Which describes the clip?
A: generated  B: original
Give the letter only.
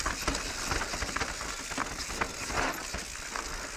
B